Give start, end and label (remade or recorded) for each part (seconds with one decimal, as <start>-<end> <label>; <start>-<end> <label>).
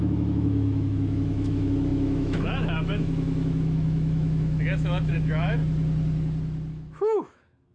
0.0-5.6 remade; 5.6-6.7 recorded; 6.7-7.7 remade